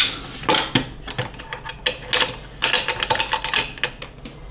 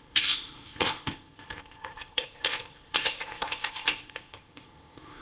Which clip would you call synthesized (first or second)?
second